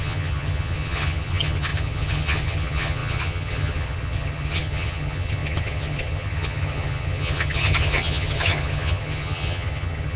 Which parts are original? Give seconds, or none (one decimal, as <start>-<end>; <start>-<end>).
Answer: none